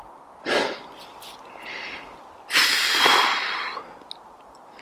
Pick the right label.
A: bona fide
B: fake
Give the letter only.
A